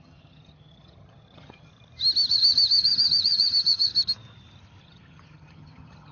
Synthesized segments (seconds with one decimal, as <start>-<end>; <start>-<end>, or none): 0.0-1.7; 2.3-3.9; 4.8-6.1